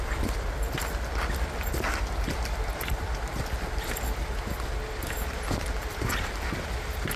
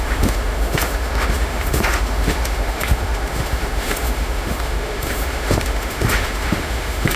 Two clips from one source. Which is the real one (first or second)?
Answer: first